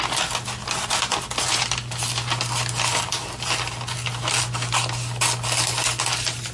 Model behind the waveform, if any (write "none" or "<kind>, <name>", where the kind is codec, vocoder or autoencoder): none